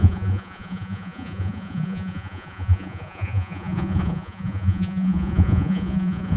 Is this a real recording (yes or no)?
no